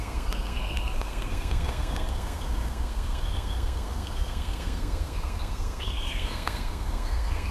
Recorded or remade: remade